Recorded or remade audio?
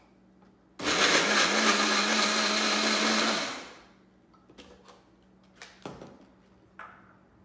recorded